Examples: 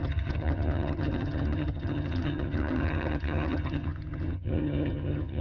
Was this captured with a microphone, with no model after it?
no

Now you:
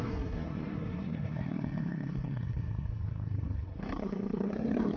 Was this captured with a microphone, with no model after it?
no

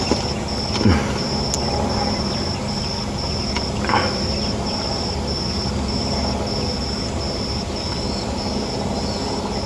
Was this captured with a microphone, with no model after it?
yes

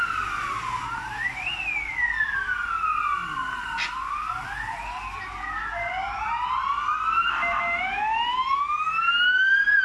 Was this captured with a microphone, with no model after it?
yes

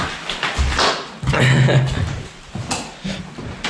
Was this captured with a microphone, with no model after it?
yes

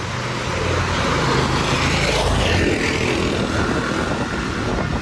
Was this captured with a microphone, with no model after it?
yes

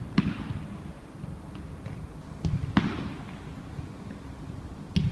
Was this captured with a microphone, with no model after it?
yes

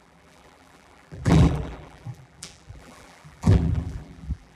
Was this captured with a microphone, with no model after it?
no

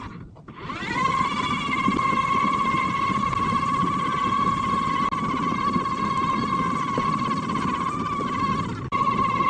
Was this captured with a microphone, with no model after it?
yes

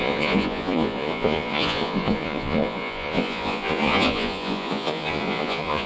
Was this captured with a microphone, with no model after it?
no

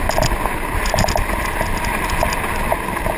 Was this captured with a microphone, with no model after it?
yes